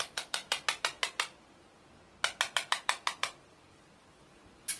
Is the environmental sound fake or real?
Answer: real